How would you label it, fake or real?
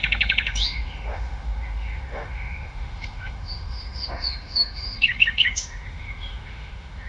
fake